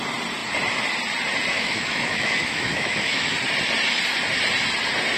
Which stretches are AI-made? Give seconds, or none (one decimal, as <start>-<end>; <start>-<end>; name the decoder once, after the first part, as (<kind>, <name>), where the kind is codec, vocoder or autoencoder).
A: 1.5-3.3 (autoencoder, DAC-VAE)